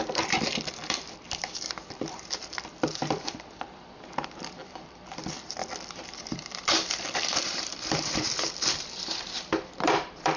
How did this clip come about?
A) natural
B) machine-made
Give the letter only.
B